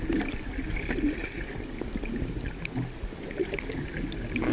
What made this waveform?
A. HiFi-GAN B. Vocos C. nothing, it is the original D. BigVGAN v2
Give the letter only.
C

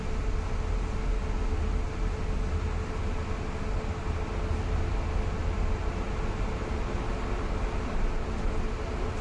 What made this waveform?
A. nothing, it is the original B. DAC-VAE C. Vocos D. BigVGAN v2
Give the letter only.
A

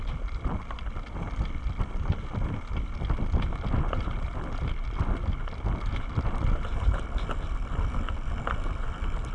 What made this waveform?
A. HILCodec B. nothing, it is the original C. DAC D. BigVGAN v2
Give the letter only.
B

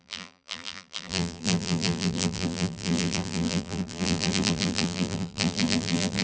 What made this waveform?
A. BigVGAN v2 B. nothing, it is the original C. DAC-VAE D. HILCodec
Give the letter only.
A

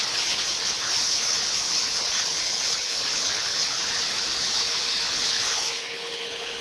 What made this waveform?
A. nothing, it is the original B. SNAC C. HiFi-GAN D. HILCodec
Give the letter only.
D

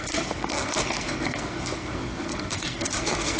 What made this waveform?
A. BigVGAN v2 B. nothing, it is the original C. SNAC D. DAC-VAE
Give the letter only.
C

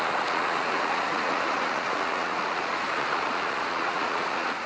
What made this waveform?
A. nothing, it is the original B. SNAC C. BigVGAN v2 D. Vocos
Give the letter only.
D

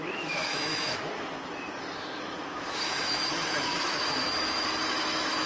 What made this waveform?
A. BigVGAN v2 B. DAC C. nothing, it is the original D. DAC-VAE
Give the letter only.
D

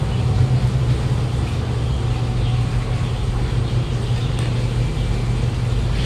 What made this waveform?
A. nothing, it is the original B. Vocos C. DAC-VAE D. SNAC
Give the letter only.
A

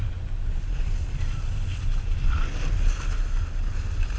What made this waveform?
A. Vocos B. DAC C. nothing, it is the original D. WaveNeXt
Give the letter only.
C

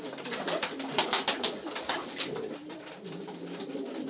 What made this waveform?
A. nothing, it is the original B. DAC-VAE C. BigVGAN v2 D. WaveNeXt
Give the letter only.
C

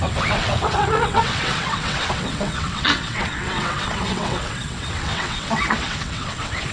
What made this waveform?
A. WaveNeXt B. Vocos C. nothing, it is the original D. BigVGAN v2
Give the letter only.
A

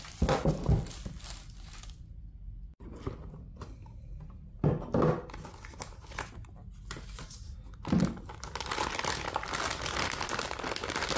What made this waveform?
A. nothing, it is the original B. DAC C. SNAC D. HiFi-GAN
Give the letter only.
A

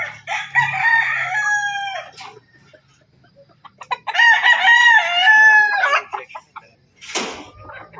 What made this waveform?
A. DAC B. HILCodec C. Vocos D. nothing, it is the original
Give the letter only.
D